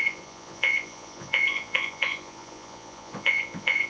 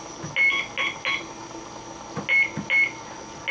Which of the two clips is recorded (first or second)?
second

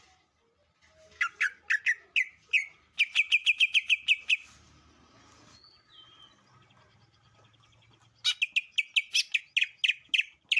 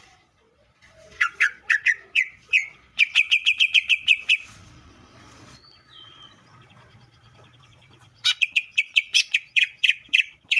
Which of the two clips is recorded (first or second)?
first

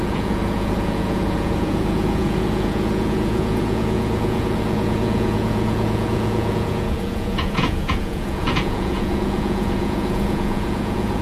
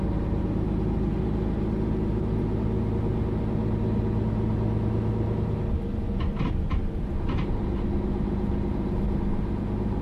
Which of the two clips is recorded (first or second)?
second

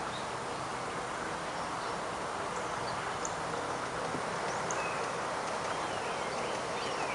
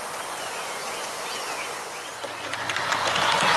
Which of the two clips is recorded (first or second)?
first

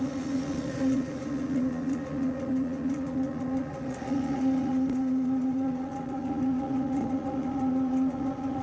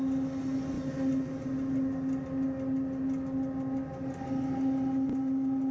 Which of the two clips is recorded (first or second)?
second